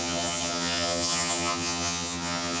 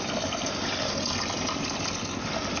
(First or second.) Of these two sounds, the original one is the second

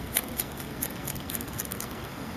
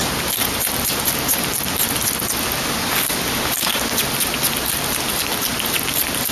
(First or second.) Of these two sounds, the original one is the second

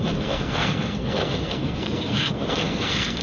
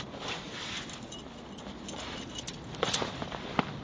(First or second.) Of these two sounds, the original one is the second